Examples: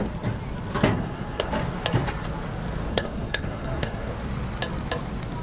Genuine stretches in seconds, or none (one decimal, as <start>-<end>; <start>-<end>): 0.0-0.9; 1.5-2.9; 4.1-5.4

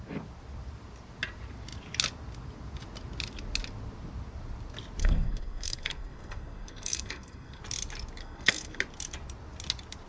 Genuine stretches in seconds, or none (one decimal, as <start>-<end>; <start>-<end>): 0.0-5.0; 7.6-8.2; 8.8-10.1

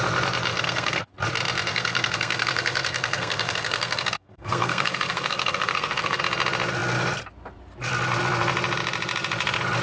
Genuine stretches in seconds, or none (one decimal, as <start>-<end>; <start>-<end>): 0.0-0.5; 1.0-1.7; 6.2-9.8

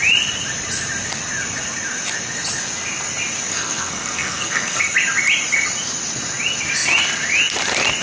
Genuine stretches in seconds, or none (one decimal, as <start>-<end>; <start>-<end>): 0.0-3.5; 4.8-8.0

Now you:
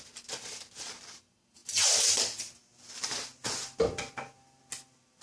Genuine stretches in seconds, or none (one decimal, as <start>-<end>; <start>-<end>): 0.0-5.2